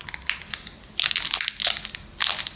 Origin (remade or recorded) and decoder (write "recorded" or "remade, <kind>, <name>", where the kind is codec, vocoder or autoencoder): recorded